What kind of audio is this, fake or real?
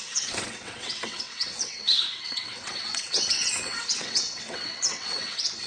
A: fake